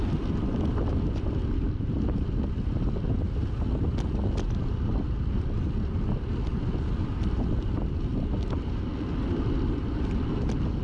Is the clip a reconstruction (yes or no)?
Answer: no